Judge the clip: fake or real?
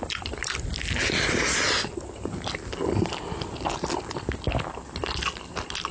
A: real